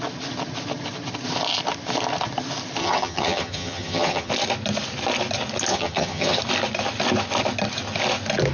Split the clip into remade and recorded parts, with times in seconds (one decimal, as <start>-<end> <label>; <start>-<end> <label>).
0.0-2.8 recorded; 2.8-4.3 remade; 4.3-5.7 recorded; 5.7-6.4 remade; 6.4-8.5 recorded